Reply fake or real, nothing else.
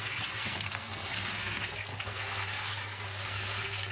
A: fake